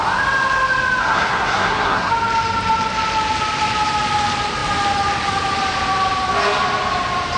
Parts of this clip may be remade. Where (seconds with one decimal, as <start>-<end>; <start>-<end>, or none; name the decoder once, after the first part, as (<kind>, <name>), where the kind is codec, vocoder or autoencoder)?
1.0-2.1 (codec, SNAC)